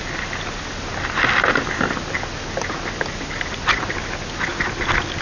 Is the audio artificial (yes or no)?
no